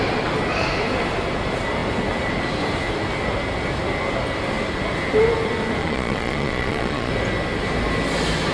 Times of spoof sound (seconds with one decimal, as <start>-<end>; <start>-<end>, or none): 5.8-7.1